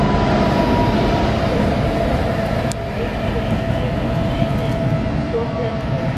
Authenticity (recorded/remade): recorded